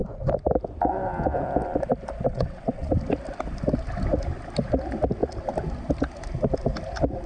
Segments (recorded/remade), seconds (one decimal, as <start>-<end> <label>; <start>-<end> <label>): 0.0-2.3 recorded; 2.3-2.9 remade; 2.9-7.3 recorded